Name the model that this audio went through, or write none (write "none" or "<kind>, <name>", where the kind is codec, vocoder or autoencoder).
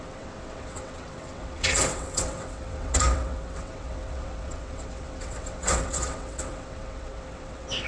vocoder, WaveNeXt